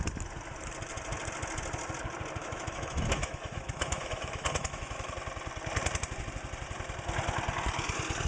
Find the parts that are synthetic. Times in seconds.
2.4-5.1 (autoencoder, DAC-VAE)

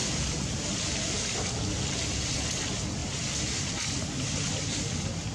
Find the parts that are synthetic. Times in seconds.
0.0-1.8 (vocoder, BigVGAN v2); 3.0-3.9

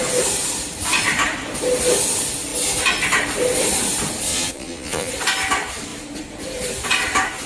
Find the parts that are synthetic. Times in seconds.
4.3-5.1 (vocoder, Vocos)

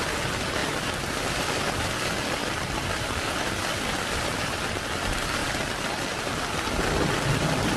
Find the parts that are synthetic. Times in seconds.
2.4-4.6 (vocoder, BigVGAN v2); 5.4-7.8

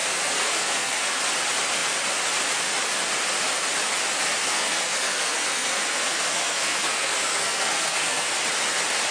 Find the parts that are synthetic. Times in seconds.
0.0-1.2 (codec, SNAC); 4.4-8.3